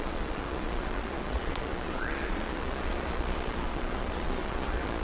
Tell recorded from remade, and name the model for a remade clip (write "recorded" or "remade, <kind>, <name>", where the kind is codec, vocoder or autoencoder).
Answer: remade, vocoder, Vocos